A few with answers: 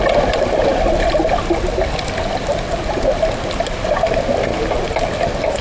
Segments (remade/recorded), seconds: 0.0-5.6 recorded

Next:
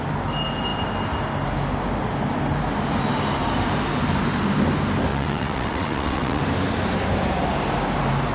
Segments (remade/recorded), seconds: 0.0-5.1 recorded; 5.1-6.4 remade; 6.4-8.3 recorded

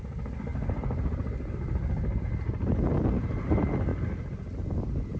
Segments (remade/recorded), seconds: 0.0-5.2 recorded

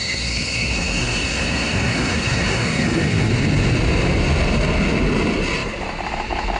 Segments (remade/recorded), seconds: 0.0-3.3 remade; 3.3-6.6 recorded

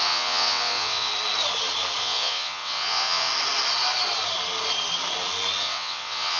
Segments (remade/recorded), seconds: 0.0-1.1 remade; 1.1-2.0 recorded; 2.0-3.3 remade; 3.3-5.6 recorded; 5.6-6.4 remade

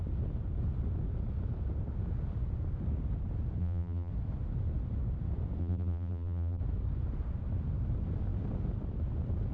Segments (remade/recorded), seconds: 0.0-3.6 recorded; 3.6-4.1 remade; 4.1-5.6 recorded; 5.6-6.6 remade; 6.6-9.5 recorded

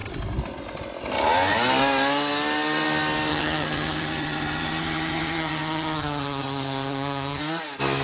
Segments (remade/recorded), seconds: 0.0-3.3 recorded; 3.3-7.4 remade; 7.4-8.0 recorded

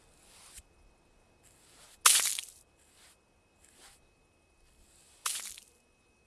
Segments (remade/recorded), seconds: 0.0-6.3 recorded